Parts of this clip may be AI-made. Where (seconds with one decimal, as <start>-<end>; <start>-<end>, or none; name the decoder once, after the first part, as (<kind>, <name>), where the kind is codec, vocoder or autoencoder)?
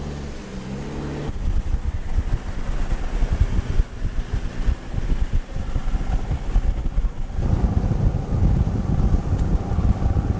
none